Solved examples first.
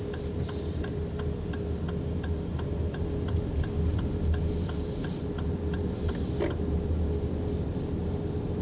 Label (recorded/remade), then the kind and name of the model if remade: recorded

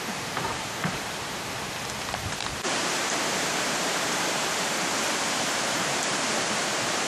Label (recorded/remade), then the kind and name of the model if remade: remade, vocoder, BigVGAN v2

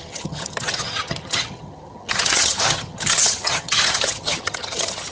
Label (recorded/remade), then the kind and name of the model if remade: remade, vocoder, HiFi-GAN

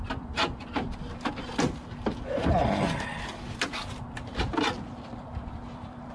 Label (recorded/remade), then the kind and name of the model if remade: remade, vocoder, BigVGAN v2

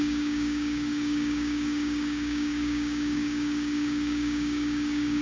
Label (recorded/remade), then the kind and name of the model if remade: remade, codec, DAC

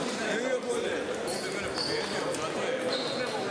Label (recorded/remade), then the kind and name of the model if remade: recorded